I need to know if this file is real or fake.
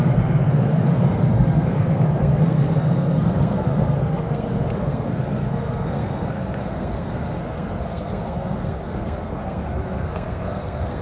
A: fake